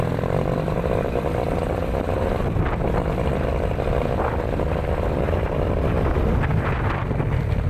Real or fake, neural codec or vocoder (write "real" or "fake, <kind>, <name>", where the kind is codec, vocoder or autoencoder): real